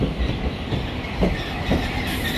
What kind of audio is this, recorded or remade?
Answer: recorded